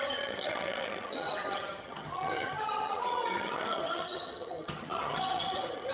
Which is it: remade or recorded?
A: remade